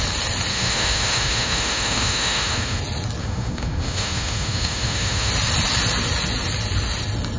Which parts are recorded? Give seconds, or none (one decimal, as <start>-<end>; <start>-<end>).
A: 0.0-0.5; 2.8-3.2; 5.3-7.4